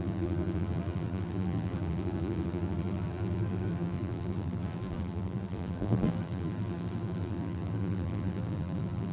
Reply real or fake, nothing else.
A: fake